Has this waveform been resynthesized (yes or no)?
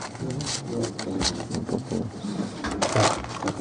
no